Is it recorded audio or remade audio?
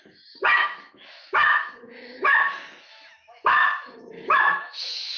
remade